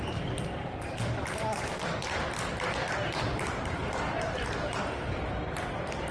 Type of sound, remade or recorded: remade